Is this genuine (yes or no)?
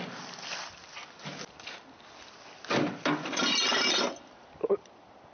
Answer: yes